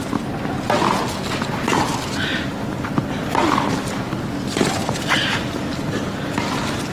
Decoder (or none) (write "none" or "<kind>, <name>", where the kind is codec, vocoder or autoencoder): none